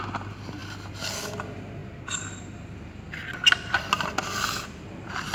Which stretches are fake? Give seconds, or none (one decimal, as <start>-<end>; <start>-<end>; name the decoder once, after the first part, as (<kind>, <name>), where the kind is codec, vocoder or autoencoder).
none